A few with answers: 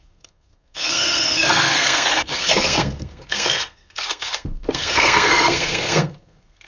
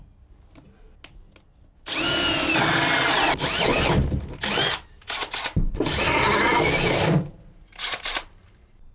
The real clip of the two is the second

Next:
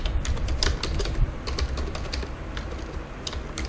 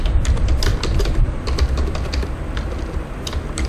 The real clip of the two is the first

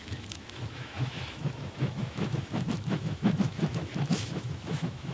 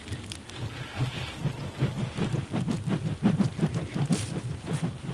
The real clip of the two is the second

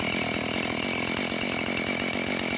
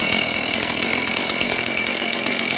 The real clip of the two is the first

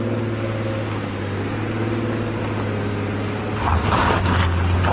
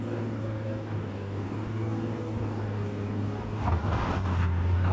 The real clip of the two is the first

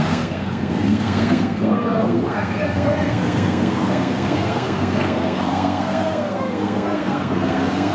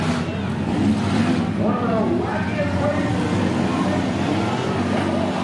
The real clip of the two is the second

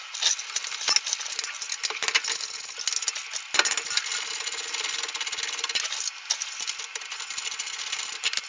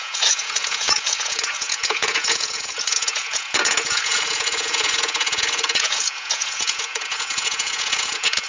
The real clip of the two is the first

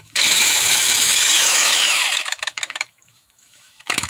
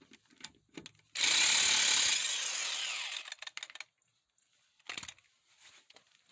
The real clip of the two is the second